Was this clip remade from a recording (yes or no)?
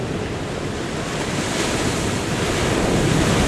no